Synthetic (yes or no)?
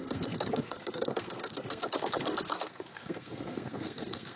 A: yes